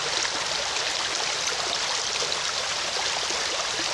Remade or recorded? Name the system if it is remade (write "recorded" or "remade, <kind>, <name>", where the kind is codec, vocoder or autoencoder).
recorded